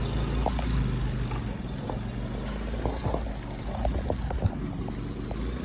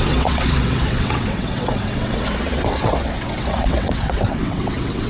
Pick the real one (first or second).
first